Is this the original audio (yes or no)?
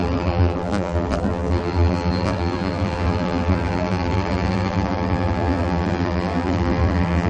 no